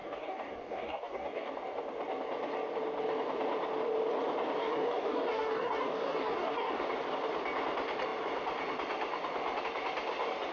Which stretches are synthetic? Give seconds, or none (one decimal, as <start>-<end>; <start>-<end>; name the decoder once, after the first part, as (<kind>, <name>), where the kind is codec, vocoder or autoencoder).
0.0-1.5 (codec, DAC); 4.6-6.8